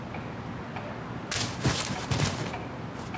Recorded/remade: recorded